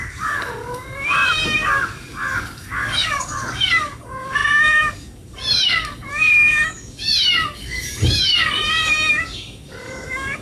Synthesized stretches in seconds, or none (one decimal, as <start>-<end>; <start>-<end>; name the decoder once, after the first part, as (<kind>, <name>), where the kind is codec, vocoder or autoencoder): 0.0-10.4 (codec, DAC)